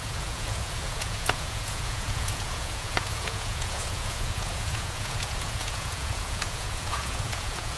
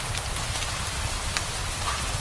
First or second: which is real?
second